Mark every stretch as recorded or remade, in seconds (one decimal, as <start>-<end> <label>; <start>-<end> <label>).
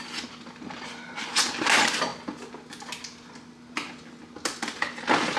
0.0-5.4 recorded